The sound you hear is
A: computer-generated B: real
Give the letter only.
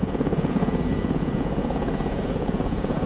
A